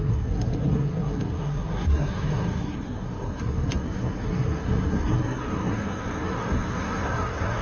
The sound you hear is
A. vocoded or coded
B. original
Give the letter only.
A